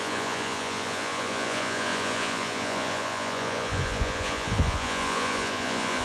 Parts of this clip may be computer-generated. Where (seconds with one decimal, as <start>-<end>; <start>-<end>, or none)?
0.0-6.0